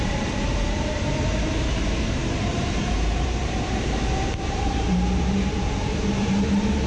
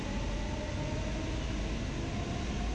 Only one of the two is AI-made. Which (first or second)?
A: first